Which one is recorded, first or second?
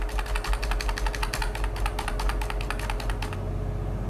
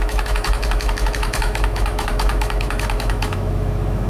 first